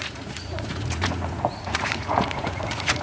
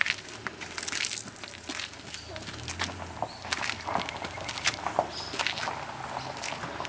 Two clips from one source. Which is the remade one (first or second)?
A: first